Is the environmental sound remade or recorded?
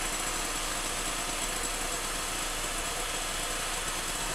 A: recorded